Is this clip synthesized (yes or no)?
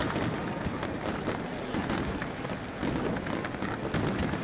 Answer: no